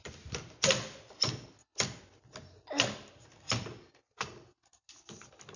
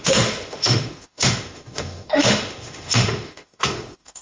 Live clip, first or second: first